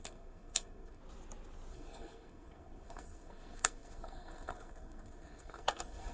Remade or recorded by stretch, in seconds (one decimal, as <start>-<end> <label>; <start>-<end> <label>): 0.0-1.0 remade; 1.0-1.7 recorded; 1.7-6.1 remade